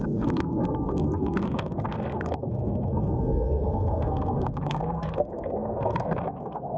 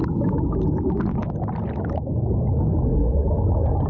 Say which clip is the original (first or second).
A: second